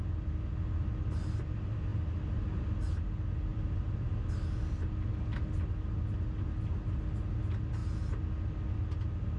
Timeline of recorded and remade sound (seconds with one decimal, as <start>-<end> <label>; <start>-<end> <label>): 0.0-3.5 recorded; 3.5-4.1 remade; 4.1-9.4 recorded